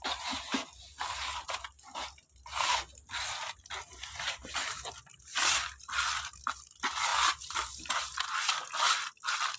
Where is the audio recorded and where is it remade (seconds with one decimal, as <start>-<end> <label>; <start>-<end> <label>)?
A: 0.0-9.6 recorded